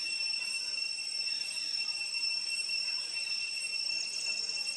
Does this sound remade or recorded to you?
recorded